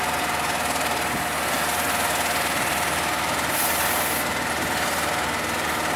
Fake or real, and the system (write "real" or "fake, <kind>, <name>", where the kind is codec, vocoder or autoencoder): real